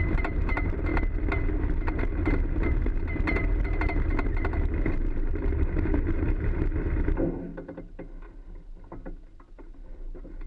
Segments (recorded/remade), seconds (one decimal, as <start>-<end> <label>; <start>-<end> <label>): 0.0-0.9 remade; 0.9-1.8 recorded; 1.8-2.8 remade; 2.8-3.4 recorded; 3.4-7.5 remade; 7.5-9.2 recorded; 9.2-10.5 remade